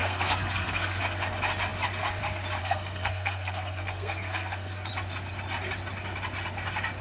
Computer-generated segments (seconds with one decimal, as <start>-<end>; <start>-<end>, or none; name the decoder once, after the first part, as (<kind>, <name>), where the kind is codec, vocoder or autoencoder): 0.0-1.0 (codec, SNAC); 2.6-4.9